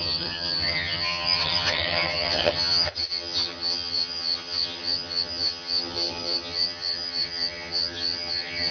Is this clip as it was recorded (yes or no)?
no